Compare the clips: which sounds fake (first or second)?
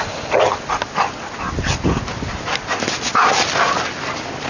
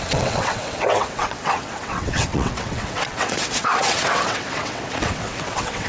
second